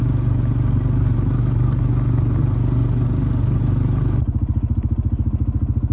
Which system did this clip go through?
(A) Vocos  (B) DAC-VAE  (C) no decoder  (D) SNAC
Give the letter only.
C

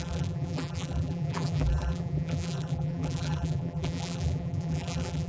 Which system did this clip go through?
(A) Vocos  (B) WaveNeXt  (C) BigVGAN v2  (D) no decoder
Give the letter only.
C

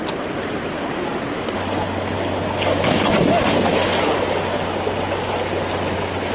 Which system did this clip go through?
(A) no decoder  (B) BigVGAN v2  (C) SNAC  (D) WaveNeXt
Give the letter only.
A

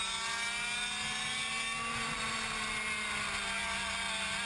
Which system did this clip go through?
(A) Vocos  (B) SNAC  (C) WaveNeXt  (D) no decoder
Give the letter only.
D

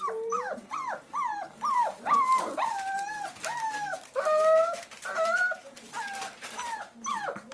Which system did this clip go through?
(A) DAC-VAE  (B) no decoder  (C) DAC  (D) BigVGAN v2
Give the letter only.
D